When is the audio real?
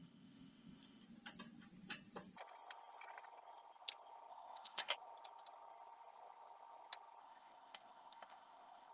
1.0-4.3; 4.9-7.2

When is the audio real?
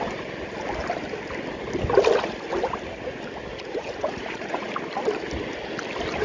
0.0-3.5; 4.7-6.2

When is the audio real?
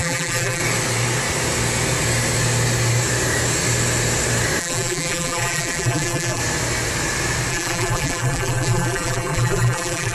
0.6-4.6; 6.4-7.5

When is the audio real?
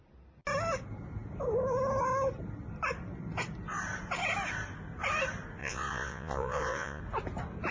0.0-5.6; 7.0-7.7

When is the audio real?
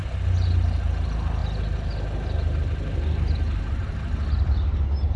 0.0-5.2